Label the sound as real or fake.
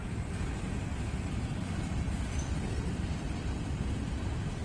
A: real